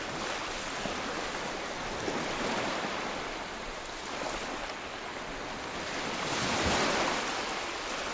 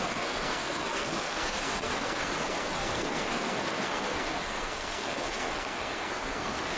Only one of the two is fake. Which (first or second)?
second